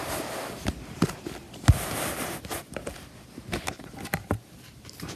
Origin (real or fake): real